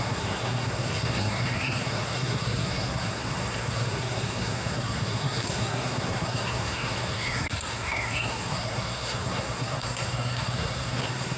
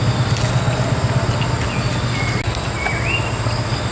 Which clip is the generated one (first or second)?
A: first